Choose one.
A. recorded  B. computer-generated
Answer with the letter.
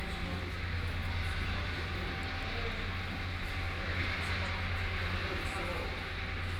A